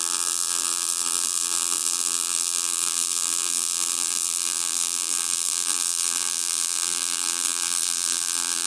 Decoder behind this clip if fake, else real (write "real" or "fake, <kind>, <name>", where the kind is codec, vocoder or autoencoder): fake, vocoder, BigVGAN v2